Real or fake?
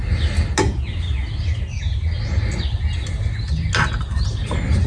real